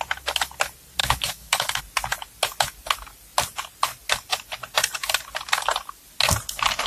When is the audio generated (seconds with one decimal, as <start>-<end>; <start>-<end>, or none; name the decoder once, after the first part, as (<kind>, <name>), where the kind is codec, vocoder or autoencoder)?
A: 1.0-1.8 (codec, DAC)

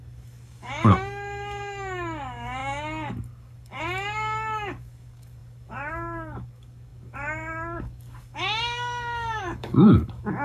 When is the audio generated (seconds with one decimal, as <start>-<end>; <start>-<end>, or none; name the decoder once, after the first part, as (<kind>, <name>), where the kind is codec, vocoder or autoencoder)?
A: 0.0-10.4 (codec, DAC)

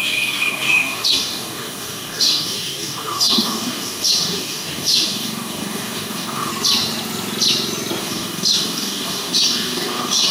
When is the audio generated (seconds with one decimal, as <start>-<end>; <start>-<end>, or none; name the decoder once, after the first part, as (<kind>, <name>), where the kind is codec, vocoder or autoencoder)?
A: 0.0-6.5 (codec, DAC); 8.0-10.3